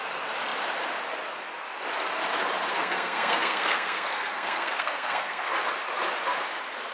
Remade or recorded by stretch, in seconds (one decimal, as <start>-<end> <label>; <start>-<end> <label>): 0.0-2.7 recorded; 2.7-5.5 remade; 5.5-6.9 recorded

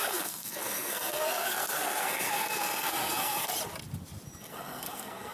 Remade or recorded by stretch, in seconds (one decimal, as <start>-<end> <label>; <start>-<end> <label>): 0.0-3.5 remade; 3.5-4.5 recorded; 4.5-5.3 remade

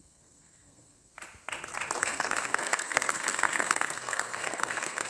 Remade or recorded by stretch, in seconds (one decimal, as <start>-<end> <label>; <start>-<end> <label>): 0.0-1.1 remade; 1.1-2.0 recorded; 2.0-5.1 remade

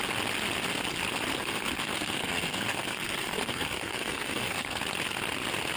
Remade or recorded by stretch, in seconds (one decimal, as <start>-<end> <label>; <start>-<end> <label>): 0.0-1.3 recorded; 1.3-4.8 remade; 4.8-5.8 recorded

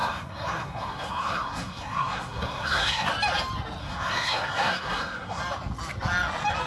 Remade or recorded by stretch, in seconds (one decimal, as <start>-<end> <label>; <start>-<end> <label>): 0.0-3.1 remade; 3.1-3.8 recorded; 3.8-5.4 remade; 5.4-6.7 recorded

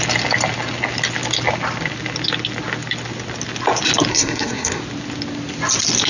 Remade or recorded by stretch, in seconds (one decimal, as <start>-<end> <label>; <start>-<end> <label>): 0.0-4.1 recorded; 4.1-4.8 remade; 4.8-6.1 recorded

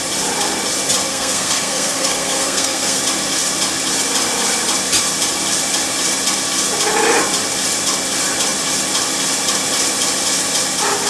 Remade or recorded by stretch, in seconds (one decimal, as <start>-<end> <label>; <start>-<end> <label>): 0.0-1.1 recorded; 1.1-3.0 remade; 3.0-11.1 recorded